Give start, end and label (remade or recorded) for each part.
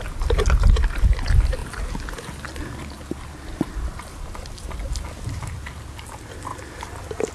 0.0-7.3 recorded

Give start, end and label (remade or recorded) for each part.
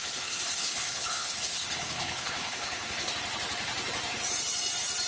0.0-3.1 remade; 3.1-5.1 recorded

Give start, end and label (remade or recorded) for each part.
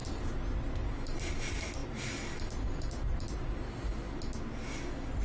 0.0-1.4 remade; 1.4-1.8 recorded; 1.8-3.9 remade; 3.9-5.2 recorded